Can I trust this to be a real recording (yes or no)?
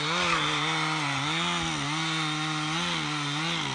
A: yes